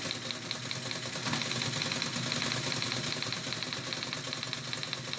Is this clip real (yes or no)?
yes